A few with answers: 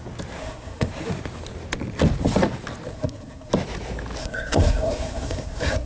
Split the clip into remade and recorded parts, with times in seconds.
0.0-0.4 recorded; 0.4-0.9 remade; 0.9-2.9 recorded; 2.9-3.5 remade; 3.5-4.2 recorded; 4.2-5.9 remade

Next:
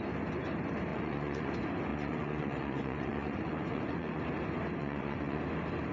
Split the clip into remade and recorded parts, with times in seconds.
0.0-0.9 recorded; 0.9-1.5 remade; 1.5-1.9 recorded; 1.9-4.2 remade; 4.2-4.8 recorded; 4.8-5.4 remade; 5.4-5.9 recorded

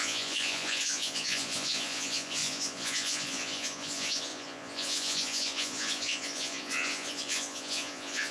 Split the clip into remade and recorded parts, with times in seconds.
0.0-8.3 remade

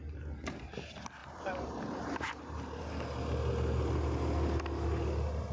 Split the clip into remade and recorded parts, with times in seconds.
0.0-1.2 recorded; 1.2-2.9 remade; 2.9-5.5 recorded

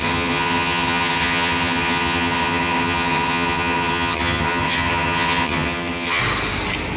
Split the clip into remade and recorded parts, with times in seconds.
0.0-6.2 remade; 6.2-7.0 recorded

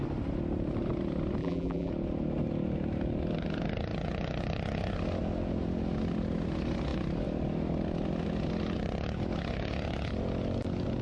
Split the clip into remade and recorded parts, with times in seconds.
0.0-1.4 recorded; 1.4-1.9 remade; 1.9-11.0 recorded

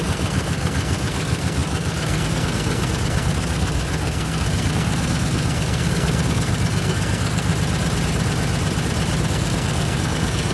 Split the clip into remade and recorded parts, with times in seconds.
0.0-7.5 remade; 7.5-9.3 recorded; 9.3-10.5 remade